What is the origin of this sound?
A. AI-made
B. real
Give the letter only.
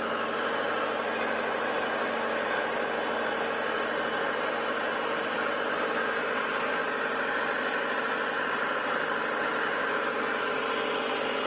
B